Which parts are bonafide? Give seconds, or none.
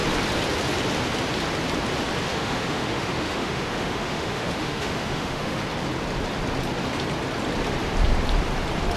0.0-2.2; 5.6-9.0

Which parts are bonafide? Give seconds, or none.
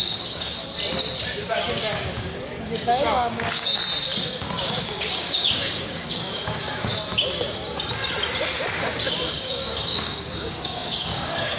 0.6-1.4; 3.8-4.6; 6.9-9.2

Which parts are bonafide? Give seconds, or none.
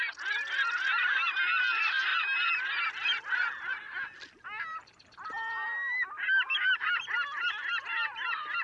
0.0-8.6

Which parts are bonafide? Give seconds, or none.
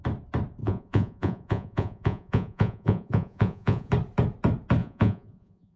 0.0-0.6; 3.9-4.8